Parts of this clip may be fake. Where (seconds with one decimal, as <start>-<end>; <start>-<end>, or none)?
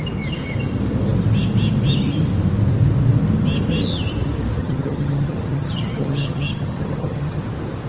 4.6-7.4